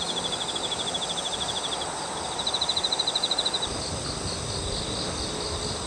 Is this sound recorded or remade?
recorded